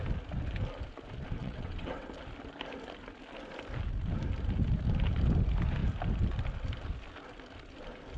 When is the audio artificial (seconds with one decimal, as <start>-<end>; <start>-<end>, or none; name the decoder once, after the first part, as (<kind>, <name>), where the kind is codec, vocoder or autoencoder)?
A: 1.4-2.1 (vocoder, WaveNeXt)